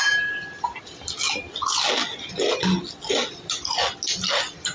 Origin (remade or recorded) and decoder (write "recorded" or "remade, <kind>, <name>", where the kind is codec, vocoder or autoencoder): recorded